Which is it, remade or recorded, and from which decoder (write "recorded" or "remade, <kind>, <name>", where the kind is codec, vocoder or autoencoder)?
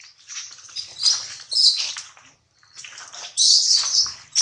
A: recorded